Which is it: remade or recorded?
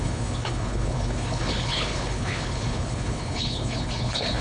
remade